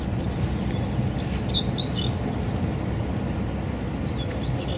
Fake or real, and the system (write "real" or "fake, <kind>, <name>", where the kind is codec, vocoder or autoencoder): real